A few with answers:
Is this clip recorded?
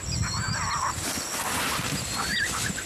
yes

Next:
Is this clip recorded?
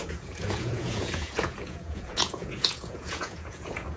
no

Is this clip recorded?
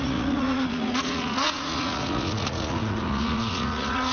no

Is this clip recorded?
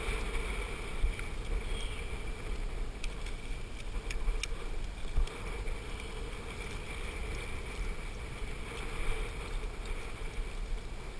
yes